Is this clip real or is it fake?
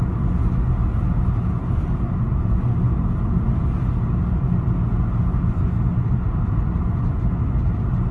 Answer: real